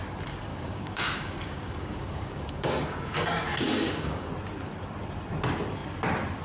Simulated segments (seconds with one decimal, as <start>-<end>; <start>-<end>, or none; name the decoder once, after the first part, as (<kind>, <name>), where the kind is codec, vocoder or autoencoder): 0.5-4.3 (codec, DAC)